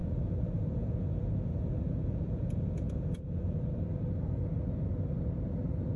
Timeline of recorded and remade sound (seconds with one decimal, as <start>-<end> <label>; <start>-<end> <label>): 0.0-3.6 remade; 3.6-6.0 recorded